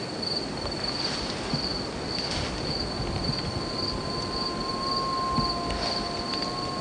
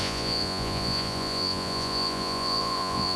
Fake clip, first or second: second